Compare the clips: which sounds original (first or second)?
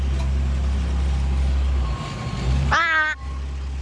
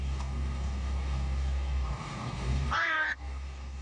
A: first